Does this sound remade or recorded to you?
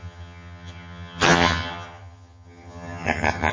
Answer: remade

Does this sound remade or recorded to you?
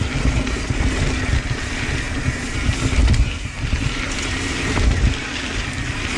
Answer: recorded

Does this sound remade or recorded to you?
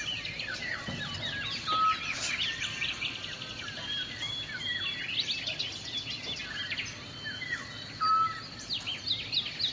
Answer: recorded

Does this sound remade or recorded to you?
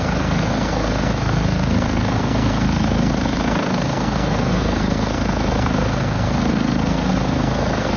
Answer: remade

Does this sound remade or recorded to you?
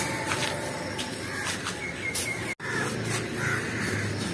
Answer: recorded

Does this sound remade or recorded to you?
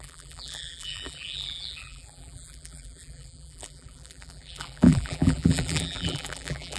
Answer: remade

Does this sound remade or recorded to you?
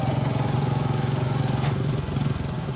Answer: remade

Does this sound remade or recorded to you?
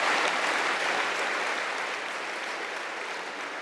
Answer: recorded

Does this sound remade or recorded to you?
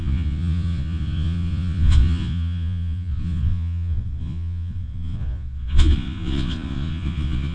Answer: remade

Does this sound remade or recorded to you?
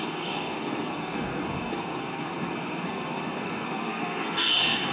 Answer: remade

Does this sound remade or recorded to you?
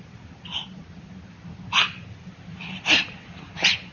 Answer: recorded